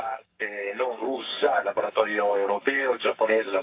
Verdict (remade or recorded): remade